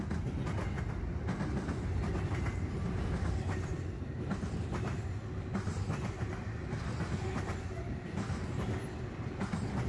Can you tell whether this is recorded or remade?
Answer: recorded